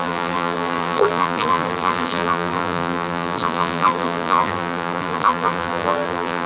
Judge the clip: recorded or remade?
remade